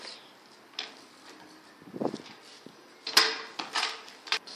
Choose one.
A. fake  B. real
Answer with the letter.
B